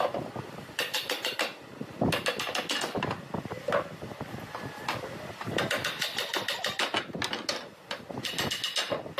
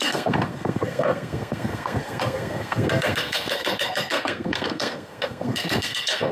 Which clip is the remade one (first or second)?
second